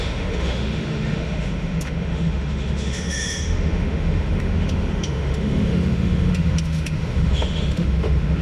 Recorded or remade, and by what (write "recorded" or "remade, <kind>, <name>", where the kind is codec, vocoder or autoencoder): remade, autoencoder, DAC-VAE